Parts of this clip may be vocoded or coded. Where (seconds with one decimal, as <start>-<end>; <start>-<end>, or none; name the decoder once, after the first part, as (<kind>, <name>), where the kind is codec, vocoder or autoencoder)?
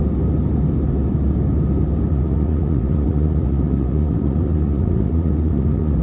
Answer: 2.1-6.0 (vocoder, Vocos)